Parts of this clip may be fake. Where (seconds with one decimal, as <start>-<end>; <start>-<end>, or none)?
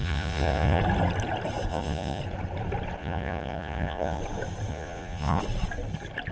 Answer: 0.0-0.8; 1.7-2.2; 3.0-4.2; 4.7-5.4